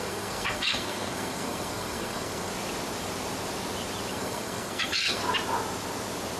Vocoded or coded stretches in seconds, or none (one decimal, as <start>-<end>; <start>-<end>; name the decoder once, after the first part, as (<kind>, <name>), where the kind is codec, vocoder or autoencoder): 0.0-2.5 (codec, SNAC); 4.1-5.2